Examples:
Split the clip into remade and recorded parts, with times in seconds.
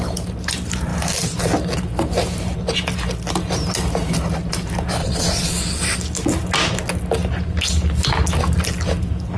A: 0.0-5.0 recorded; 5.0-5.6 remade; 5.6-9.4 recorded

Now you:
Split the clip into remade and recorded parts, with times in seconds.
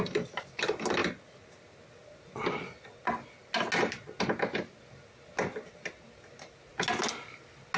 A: 0.0-7.8 recorded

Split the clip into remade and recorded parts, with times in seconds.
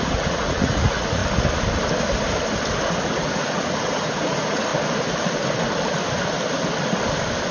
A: 0.0-1.2 remade; 1.2-2.9 recorded; 2.9-4.7 remade; 4.7-7.5 recorded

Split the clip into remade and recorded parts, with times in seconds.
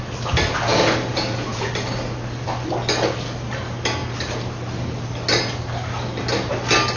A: 0.0-0.7 recorded; 0.7-1.7 remade; 1.7-7.0 recorded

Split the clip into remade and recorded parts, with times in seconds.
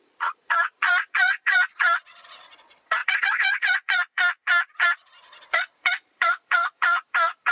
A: 0.0-7.5 remade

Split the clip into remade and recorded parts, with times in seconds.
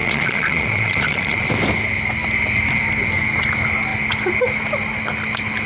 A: 0.0-1.5 remade; 1.5-5.7 recorded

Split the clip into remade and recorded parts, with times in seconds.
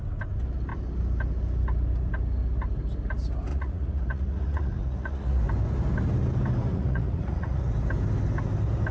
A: 0.0-3.5 recorded; 3.5-5.4 remade; 5.4-6.7 recorded; 6.7-7.7 remade; 7.7-8.9 recorded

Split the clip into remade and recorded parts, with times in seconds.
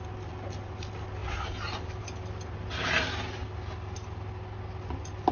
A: 0.0-5.3 recorded